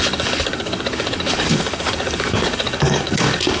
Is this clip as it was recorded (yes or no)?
no